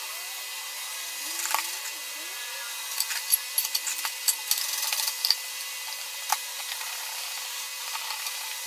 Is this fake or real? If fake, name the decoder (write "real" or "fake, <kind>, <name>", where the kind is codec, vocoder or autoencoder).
real